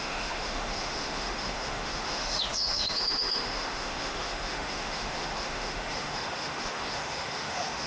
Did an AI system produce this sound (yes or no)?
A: yes